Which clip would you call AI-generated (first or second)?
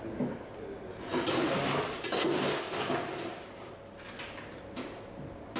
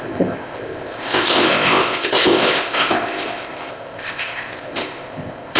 second